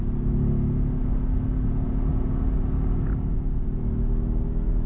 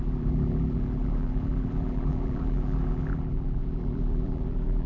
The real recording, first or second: first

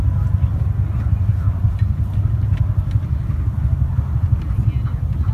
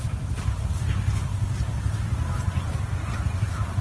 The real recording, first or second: first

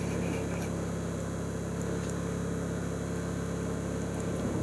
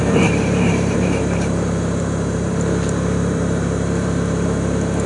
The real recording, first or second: first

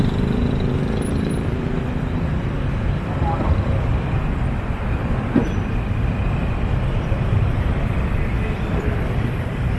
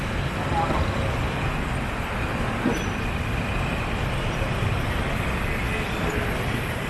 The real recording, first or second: second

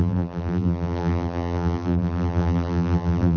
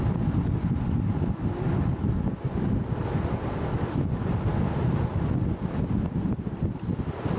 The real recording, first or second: second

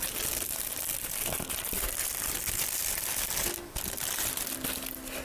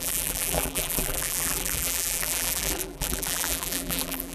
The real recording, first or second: first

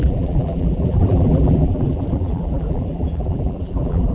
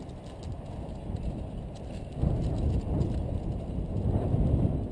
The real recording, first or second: second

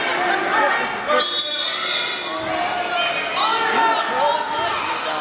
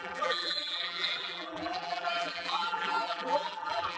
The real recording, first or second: first